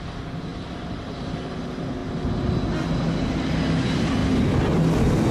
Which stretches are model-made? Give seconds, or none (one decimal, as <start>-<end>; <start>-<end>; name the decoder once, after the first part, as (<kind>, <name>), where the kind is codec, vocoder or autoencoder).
none